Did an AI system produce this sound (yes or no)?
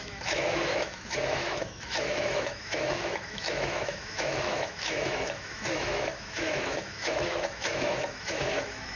yes